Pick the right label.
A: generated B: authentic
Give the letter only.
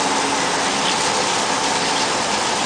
B